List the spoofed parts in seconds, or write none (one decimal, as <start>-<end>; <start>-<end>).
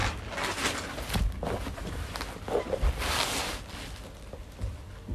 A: none